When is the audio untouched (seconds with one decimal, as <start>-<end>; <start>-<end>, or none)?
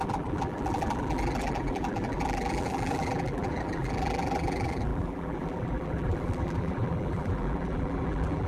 none